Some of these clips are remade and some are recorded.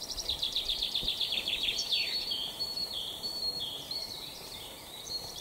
remade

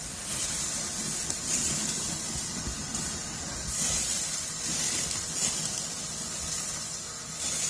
recorded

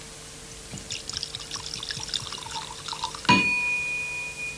recorded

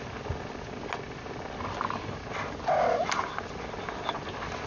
recorded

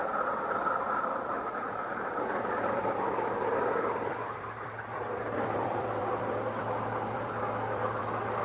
remade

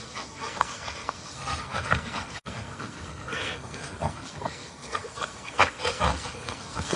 remade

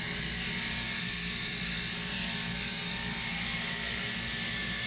remade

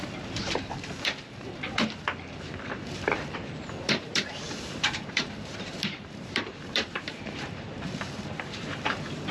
remade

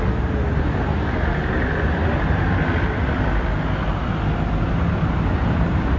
recorded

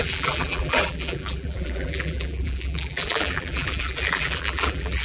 remade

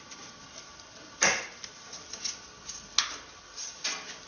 recorded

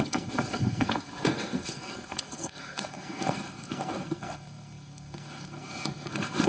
remade